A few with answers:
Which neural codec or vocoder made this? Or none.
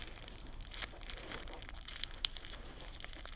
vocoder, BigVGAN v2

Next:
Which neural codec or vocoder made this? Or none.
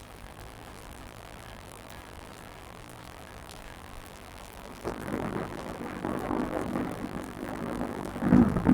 vocoder, BigVGAN v2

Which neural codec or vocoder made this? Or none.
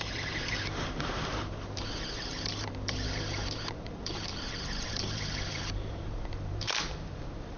vocoder, BigVGAN v2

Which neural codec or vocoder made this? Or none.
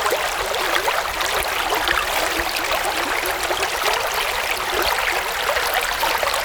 none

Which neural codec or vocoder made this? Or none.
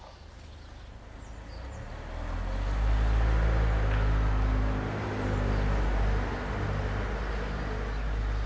none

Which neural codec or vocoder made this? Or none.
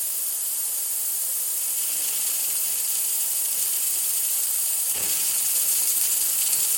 vocoder, BigVGAN v2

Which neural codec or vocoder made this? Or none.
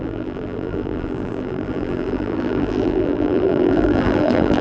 vocoder, BigVGAN v2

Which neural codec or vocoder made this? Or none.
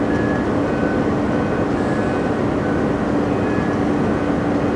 none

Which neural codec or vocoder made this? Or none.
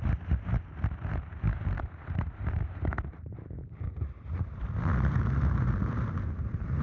vocoder, BigVGAN v2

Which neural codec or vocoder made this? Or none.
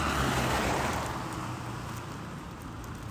none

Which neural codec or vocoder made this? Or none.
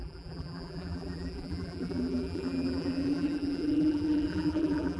vocoder, BigVGAN v2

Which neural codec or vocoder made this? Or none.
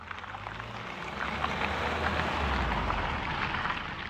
none